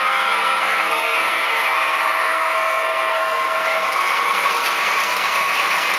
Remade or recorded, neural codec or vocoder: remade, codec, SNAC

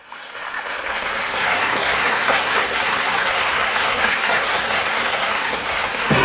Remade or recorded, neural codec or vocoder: remade, codec, SNAC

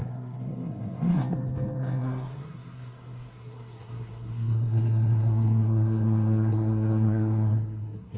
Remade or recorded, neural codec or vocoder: remade, codec, SNAC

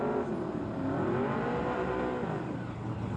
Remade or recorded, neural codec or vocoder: recorded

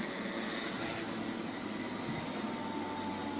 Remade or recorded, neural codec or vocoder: recorded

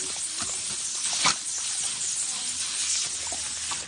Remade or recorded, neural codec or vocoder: recorded